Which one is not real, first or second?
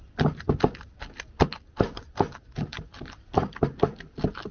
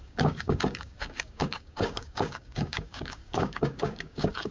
second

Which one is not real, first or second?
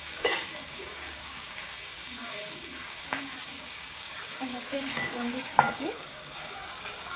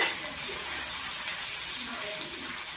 first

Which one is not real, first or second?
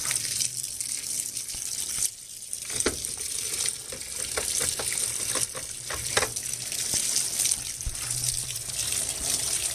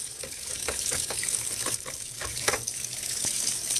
second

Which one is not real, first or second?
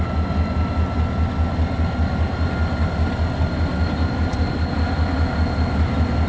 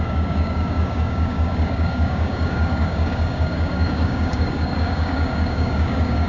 second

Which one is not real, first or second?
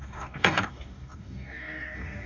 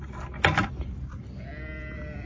first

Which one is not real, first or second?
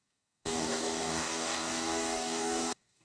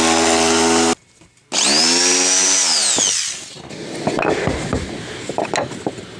first